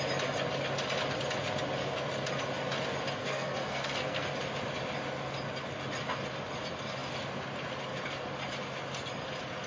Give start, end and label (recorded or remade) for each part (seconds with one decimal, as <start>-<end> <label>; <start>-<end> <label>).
0.0-3.2 recorded; 3.2-4.3 remade; 4.3-9.7 recorded